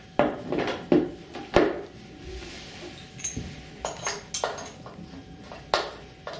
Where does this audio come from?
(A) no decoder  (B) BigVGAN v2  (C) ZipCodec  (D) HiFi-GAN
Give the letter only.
A